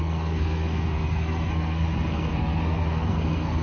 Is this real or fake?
fake